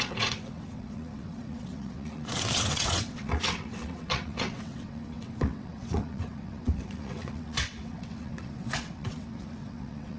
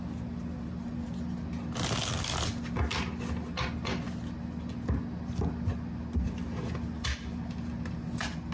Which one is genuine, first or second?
second